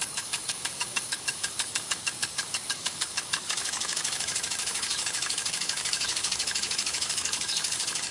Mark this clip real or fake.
fake